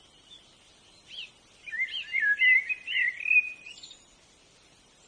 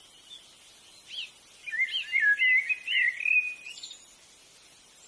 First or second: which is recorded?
second